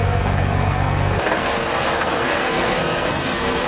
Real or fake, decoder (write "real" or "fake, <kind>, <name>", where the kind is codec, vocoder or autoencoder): fake, codec, SNAC